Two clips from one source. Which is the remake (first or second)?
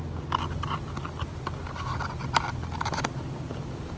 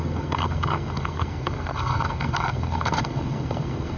second